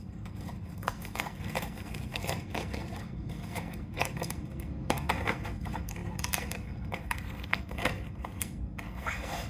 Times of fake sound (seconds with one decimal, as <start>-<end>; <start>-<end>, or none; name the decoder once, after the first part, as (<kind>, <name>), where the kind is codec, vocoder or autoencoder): 0.0-9.5 (codec, SNAC)

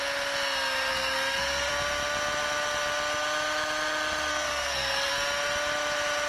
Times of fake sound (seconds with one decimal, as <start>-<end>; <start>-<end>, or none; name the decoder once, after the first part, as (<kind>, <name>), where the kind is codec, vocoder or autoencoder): 0.9-1.7 (codec, SNAC); 4.3-5.1

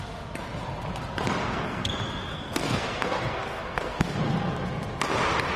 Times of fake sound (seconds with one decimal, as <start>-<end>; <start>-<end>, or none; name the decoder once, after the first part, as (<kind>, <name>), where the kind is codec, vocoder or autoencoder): 1.4-1.9 (codec, SNAC); 2.3-4.2